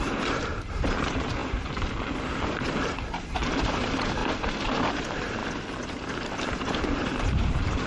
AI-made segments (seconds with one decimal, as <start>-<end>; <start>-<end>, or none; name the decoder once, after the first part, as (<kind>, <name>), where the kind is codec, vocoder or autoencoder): 0.0-4.2 (vocoder, BigVGAN v2); 4.8-5.4; 6.5-7.9